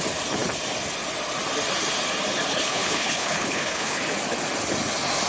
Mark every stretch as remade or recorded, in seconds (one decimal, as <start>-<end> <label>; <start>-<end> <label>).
0.0-2.5 recorded; 2.5-4.0 remade; 4.0-5.3 recorded